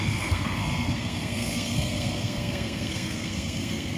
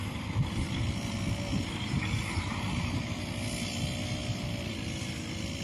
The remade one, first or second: first